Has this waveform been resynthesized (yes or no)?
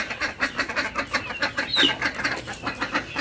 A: no